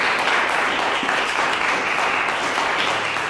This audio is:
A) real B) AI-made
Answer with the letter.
A